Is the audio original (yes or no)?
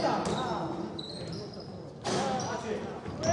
yes